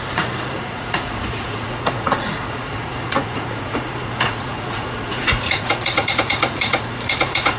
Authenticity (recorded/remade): remade